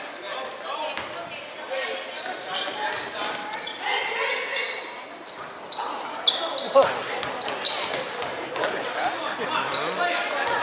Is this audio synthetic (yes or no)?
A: no